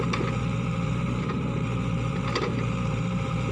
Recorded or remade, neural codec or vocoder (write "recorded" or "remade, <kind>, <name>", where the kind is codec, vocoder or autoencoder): remade, vocoder, BigVGAN v2